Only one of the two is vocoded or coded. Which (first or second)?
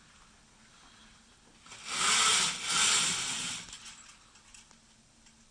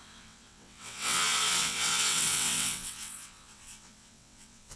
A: second